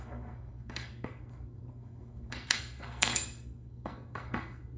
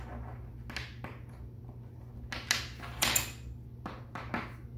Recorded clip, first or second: second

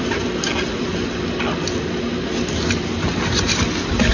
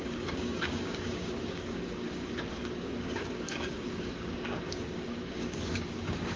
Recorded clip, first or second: first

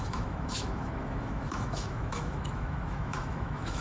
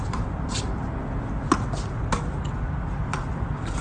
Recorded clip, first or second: second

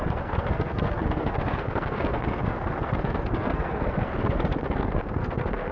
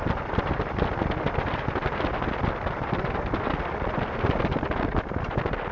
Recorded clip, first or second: second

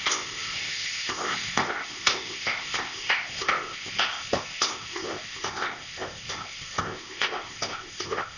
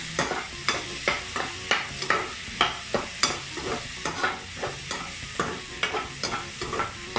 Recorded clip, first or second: second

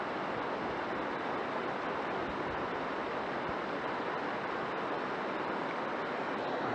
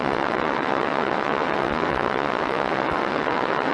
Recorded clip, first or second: first